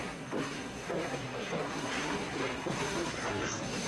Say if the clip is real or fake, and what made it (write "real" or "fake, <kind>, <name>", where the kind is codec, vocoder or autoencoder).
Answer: fake, codec, SNAC